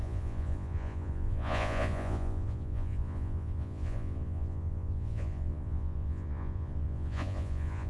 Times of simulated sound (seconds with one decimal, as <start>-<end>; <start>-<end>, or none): 0.0-7.9